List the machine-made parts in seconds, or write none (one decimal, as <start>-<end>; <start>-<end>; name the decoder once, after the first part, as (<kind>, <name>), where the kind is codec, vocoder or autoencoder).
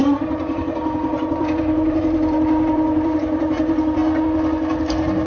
0.0-4.0 (vocoder, BigVGAN v2)